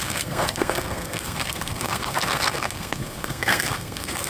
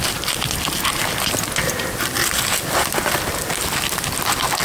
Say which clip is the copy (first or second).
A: first